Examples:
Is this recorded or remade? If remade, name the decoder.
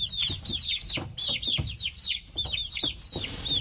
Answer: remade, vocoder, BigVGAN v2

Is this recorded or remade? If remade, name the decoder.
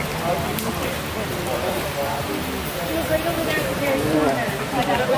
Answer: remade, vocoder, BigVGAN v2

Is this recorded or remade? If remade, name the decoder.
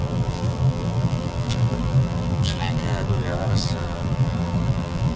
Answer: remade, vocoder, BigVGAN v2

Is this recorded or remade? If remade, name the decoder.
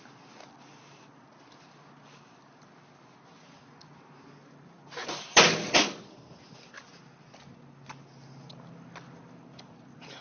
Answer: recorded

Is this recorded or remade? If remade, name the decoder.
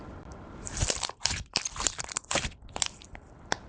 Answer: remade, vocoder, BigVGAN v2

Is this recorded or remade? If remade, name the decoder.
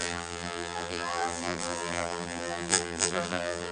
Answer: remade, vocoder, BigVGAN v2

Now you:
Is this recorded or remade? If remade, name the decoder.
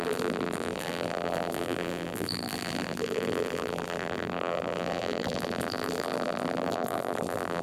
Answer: remade, vocoder, BigVGAN v2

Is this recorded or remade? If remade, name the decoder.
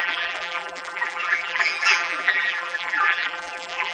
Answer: remade, vocoder, BigVGAN v2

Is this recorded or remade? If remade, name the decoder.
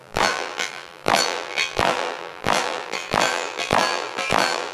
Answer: remade, vocoder, BigVGAN v2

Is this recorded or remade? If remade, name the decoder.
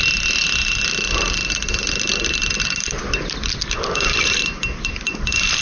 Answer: recorded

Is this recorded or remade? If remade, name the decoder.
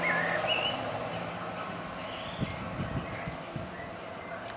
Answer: recorded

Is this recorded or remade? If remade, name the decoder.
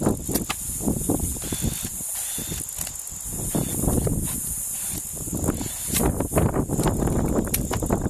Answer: recorded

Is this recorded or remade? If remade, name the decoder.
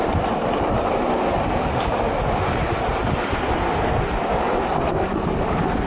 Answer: remade, vocoder, BigVGAN v2